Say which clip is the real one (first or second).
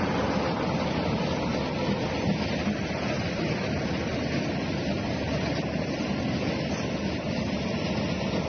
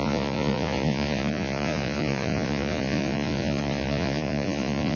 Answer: first